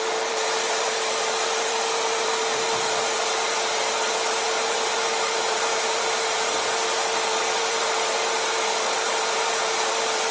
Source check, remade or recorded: remade